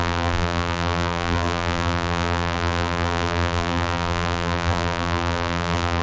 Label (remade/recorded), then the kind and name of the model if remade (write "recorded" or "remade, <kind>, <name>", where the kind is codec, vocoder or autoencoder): remade, vocoder, BigVGAN v2